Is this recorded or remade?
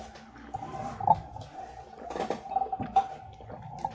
recorded